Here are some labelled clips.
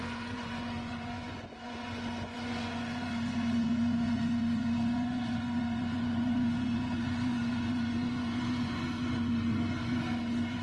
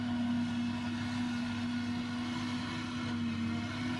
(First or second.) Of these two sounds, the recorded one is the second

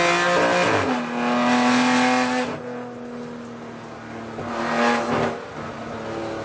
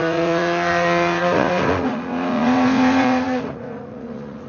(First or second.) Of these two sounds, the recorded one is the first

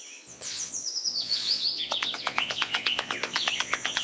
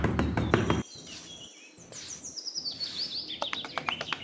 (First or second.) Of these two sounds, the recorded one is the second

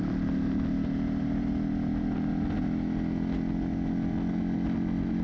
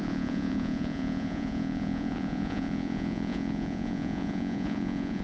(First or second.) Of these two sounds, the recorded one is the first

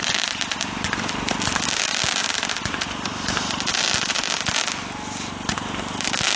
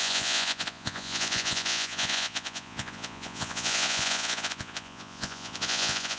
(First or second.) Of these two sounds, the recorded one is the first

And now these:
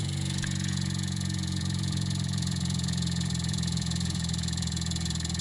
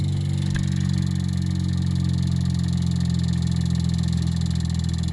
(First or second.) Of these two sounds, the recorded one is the second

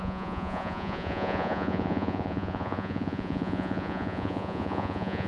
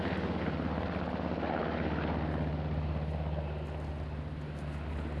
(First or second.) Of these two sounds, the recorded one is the second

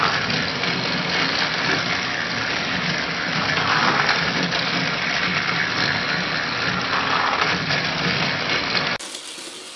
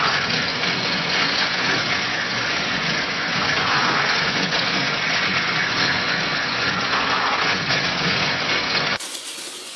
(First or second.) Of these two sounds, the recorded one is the first